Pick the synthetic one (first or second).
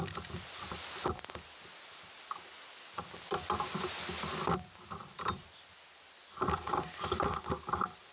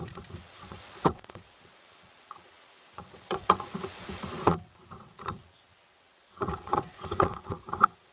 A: second